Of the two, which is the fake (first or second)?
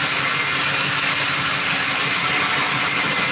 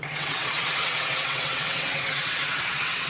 second